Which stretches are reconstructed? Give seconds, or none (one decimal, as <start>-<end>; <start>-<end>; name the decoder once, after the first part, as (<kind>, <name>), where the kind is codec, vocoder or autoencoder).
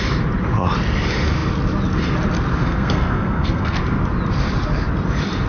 2.6-3.8 (codec, SNAC)